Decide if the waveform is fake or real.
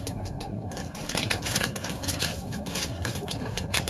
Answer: fake